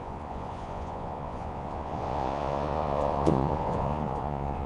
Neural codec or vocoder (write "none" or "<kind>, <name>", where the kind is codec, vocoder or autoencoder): vocoder, Vocos